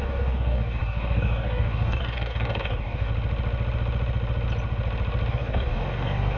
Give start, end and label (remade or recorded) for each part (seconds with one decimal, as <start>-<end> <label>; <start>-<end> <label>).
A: 0.0-3.1 remade; 3.1-5.3 recorded; 5.3-6.4 remade